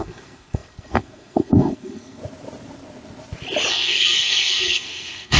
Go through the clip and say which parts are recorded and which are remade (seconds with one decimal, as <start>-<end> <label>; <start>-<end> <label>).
0.0-2.2 remade; 2.2-3.7 recorded; 3.7-5.4 remade